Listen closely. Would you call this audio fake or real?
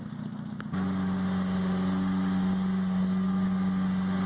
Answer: real